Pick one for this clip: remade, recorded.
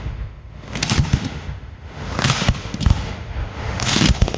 remade